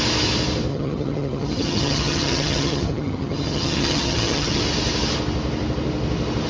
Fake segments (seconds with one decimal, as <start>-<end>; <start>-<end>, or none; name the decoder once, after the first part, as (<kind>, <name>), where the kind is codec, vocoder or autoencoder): 0.7-4.6 (vocoder, HiFi-GAN)